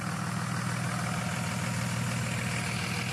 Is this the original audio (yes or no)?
yes